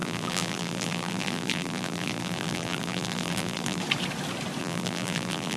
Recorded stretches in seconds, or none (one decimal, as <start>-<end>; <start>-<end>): 3.8-4.6